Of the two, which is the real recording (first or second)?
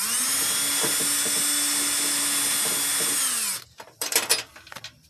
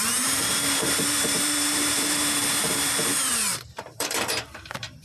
first